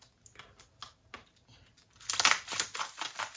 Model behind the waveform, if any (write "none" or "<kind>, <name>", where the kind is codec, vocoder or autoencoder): none